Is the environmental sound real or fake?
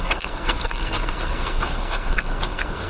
fake